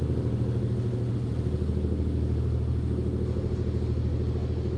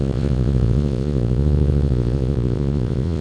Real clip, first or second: first